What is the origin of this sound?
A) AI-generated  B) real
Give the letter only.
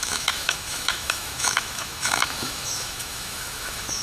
A